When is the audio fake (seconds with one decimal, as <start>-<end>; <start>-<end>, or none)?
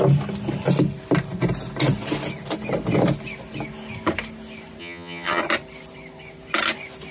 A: 4.8-5.4